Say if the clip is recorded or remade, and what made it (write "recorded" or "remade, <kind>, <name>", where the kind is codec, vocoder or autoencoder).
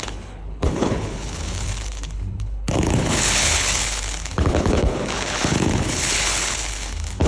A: remade, codec, HILCodec